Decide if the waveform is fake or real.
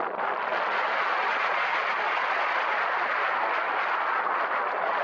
real